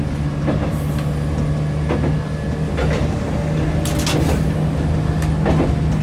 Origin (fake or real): real